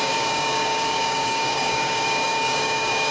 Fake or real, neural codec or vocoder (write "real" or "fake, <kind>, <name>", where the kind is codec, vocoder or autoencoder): fake, codec, DAC